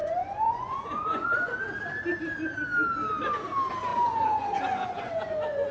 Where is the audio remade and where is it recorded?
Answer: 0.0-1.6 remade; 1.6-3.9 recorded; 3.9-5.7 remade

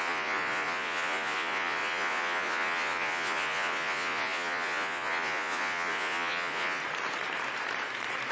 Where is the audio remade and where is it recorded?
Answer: 0.0-6.8 remade; 6.8-8.3 recorded